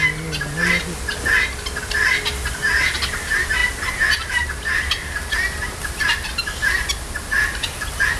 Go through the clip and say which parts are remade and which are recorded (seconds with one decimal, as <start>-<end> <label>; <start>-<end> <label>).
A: 0.0-3.6 recorded; 3.6-6.4 remade; 6.4-8.2 recorded